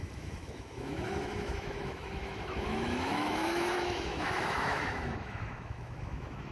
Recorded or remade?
remade